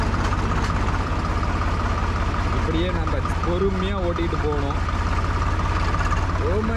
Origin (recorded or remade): recorded